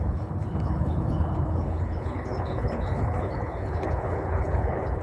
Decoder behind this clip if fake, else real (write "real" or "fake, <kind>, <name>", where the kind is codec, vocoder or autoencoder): fake, codec, HILCodec